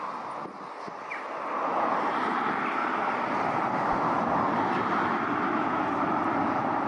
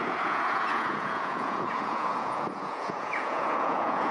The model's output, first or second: second